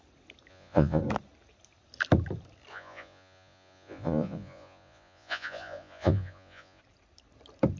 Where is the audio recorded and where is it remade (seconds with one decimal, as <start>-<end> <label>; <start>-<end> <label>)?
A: 0.0-0.5 recorded; 0.5-1.0 remade; 1.0-2.7 recorded; 2.7-6.8 remade; 6.8-7.8 recorded